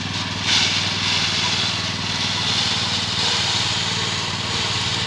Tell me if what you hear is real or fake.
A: real